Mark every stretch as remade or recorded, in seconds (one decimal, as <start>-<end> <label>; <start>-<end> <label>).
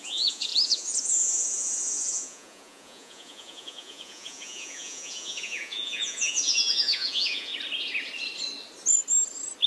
0.0-7.5 remade; 7.5-9.7 recorded